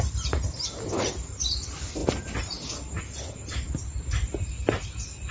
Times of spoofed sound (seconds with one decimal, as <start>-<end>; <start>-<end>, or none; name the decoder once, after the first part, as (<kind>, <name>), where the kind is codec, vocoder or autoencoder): none